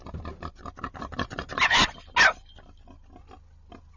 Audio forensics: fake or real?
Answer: real